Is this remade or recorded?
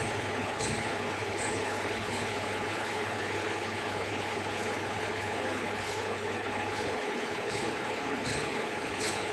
remade